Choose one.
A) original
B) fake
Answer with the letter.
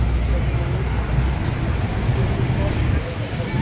A